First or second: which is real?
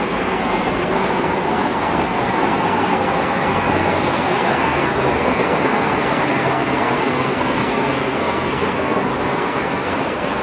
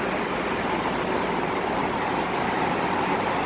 second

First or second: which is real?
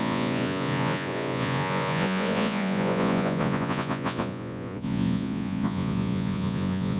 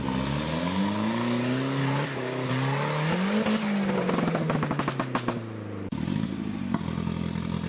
second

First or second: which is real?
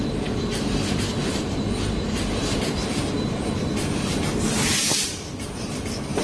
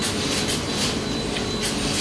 second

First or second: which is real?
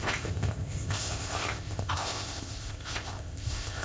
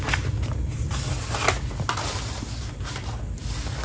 second